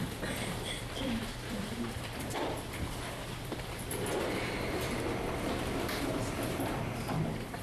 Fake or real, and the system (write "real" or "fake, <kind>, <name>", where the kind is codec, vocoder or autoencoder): fake, vocoder, BigVGAN v2